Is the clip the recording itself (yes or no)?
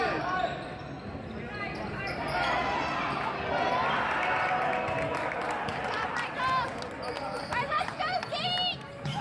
yes